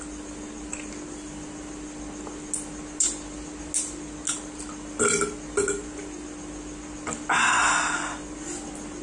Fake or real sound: real